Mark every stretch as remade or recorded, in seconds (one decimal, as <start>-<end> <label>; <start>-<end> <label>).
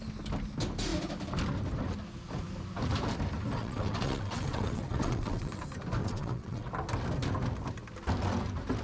0.0-3.6 recorded; 3.6-5.6 remade; 5.6-6.0 recorded; 6.0-6.7 remade; 6.7-8.8 recorded